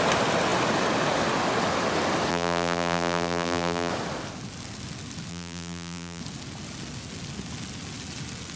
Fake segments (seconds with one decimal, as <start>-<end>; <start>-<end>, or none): 2.3-3.9; 5.3-6.2